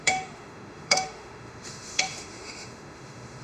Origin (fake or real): fake